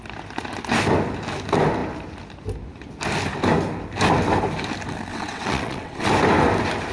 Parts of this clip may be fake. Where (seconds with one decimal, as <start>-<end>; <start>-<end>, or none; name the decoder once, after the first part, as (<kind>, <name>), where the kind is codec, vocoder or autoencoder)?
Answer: 5.1-6.1 (vocoder, WaveNeXt)